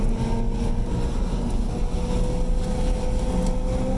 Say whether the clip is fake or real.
real